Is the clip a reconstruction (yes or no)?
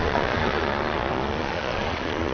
yes